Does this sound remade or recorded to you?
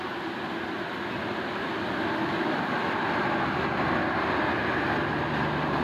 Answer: recorded